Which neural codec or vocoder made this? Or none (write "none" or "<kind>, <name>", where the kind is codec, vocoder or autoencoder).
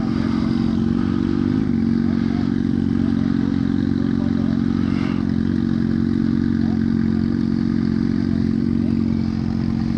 none